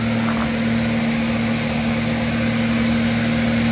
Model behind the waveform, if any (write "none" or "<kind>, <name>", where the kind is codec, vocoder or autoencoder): none